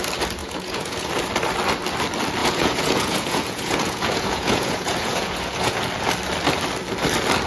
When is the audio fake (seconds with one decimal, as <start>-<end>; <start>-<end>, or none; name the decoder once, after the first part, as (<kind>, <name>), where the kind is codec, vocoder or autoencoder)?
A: 0.4-1.1 (vocoder, Vocos); 2.4-5.8